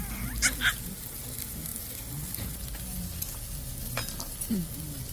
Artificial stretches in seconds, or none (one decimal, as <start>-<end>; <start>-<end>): none